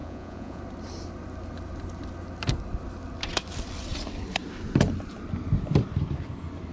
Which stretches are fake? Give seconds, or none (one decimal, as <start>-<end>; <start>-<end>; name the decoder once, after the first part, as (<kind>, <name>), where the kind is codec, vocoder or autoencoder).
0.0-0.6 (vocoder, Vocos)